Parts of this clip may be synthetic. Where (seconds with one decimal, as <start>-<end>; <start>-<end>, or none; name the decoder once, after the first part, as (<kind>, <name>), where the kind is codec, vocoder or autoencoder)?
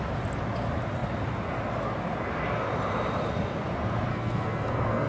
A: 4.1-5.1 (codec, SNAC)